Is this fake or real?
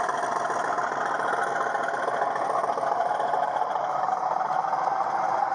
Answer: real